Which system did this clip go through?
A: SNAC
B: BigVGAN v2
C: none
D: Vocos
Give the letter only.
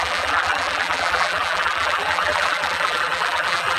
B